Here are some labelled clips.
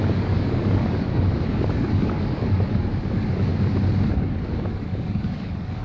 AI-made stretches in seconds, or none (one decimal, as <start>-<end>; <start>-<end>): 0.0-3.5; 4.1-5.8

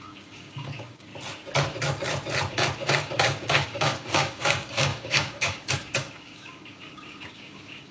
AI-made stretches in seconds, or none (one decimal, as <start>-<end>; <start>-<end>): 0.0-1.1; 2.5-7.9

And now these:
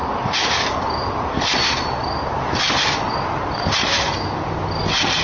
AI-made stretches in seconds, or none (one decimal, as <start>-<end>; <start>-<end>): none